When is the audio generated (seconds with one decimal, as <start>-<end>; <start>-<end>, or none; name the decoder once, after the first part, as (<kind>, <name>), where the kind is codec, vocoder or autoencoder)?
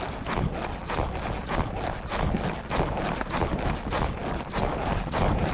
none